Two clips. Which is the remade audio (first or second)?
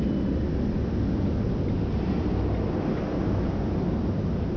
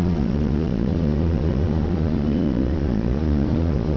second